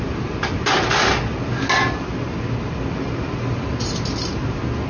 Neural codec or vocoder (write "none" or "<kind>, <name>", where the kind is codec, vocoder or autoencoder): none